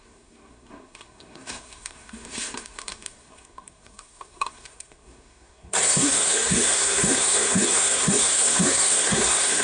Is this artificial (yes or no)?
yes